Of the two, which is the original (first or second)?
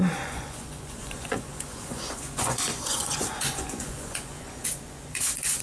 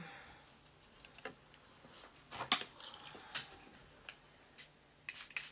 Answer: second